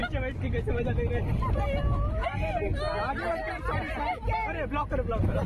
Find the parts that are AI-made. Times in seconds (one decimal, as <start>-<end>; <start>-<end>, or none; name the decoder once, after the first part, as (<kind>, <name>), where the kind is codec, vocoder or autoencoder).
none